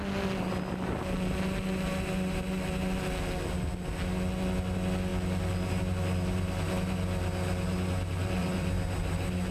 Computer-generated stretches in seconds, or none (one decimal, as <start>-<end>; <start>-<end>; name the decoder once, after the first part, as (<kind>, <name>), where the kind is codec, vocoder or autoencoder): 8.2-8.8 (vocoder, BigVGAN v2)